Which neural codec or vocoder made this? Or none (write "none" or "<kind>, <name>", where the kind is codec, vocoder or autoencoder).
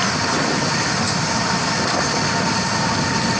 none